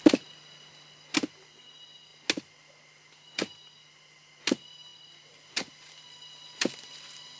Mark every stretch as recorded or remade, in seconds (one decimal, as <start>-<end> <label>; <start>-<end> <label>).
0.0-7.4 recorded